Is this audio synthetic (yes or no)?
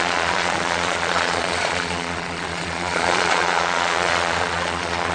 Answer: yes